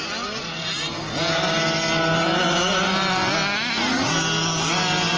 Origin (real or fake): real